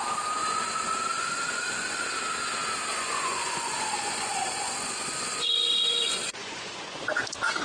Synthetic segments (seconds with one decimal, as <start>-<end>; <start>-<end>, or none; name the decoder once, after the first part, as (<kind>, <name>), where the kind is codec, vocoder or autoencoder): 0.4-2.1 (vocoder, Vocos); 2.9-7.0